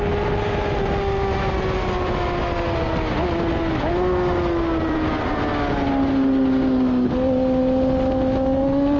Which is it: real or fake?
real